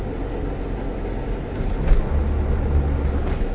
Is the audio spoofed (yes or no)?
no